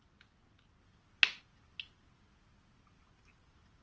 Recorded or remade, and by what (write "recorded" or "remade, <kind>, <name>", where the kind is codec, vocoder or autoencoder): recorded